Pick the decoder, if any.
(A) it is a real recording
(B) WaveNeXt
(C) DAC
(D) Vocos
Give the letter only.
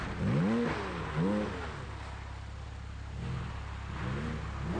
A